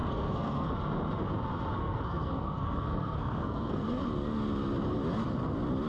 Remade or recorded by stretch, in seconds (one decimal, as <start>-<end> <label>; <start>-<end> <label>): 0.0-0.7 remade; 0.7-1.8 recorded; 1.8-4.0 remade; 4.0-5.9 recorded